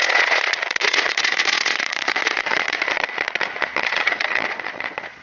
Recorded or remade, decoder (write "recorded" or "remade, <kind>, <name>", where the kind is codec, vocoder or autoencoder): remade, vocoder, Vocos